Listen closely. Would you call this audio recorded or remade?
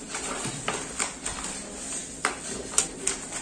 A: recorded